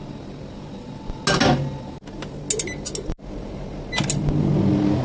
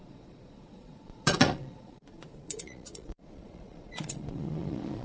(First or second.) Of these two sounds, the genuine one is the first